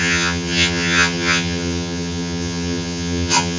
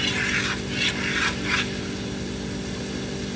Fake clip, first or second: first